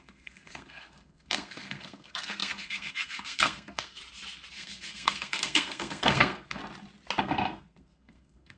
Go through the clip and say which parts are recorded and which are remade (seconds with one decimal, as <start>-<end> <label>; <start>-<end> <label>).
0.0-4.0 remade; 4.0-4.5 recorded; 4.5-6.6 remade; 6.6-7.2 recorded; 7.2-8.6 remade